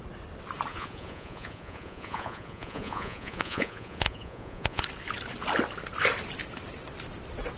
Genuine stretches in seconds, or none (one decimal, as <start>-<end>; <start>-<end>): 0.0-0.7; 4.8-7.6